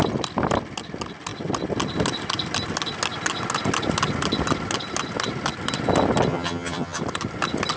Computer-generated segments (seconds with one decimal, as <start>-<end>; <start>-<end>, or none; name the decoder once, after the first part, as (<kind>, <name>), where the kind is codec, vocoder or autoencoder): 6.3-7.0 (vocoder, HiFi-GAN)